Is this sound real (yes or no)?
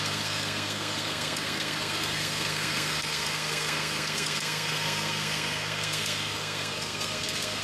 no